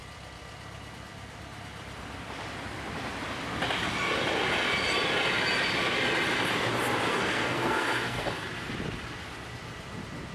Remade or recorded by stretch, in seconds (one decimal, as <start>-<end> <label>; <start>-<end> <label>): 0.0-7.1 recorded; 7.1-8.5 remade; 8.5-10.3 recorded